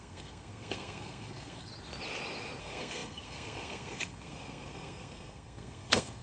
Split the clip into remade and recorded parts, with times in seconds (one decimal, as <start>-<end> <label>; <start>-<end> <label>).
0.0-1.7 remade; 1.7-2.6 recorded; 2.6-6.2 remade